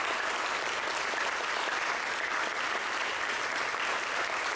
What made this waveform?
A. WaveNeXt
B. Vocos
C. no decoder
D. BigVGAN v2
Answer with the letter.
C